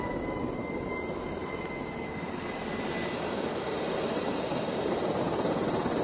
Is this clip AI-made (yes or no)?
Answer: no